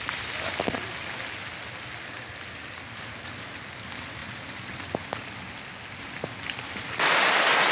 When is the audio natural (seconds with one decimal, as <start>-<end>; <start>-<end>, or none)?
0.0-7.7